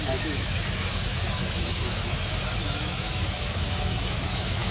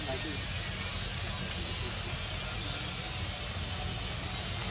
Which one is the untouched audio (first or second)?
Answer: second